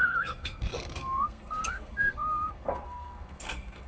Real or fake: fake